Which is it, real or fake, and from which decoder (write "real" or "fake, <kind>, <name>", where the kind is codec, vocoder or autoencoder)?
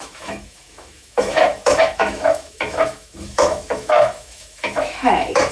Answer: fake, autoencoder, DAC-VAE